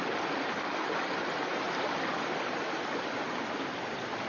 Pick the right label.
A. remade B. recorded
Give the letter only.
B